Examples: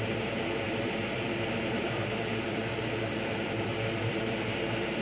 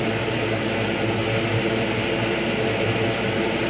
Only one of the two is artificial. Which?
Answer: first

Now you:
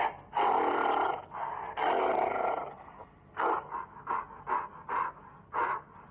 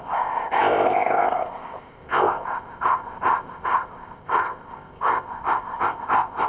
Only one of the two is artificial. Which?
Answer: second